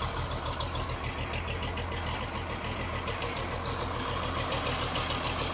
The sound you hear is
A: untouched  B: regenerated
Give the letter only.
A